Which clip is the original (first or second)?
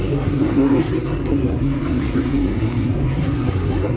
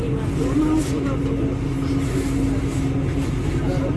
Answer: second